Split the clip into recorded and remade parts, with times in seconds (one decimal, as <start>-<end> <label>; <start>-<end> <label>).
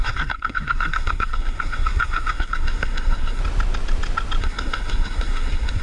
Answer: 0.0-3.4 remade; 3.4-4.4 recorded; 4.4-5.8 remade